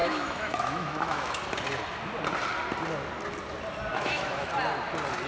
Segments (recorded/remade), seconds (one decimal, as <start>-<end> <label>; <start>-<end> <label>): 0.0-1.4 remade; 1.4-3.9 recorded; 3.9-4.5 remade; 4.5-5.3 recorded